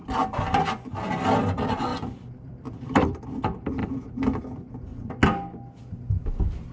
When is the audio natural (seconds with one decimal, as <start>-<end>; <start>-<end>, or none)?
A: 0.0-1.9; 3.2-6.7